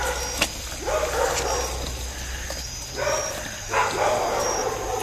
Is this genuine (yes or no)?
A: yes